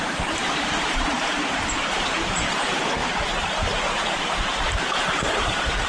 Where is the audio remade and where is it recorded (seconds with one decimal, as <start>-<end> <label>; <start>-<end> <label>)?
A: 0.0-5.9 remade